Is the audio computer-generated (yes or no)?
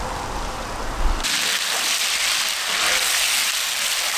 no